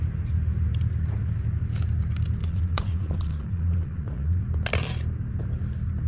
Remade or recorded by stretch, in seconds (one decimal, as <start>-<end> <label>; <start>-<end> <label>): 0.0-2.4 recorded; 2.4-4.4 remade; 4.4-6.1 recorded